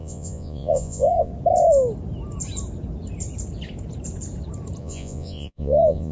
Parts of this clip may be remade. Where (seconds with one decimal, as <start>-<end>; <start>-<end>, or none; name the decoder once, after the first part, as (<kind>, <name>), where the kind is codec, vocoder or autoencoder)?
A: 0.0-1.3 (vocoder, Vocos); 4.8-6.1